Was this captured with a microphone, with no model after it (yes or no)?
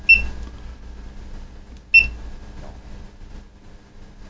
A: yes